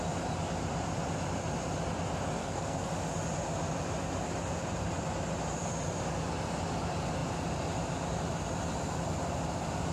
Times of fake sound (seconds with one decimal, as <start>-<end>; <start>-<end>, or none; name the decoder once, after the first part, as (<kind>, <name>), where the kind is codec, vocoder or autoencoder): 2.4-2.9 (codec, SNAC)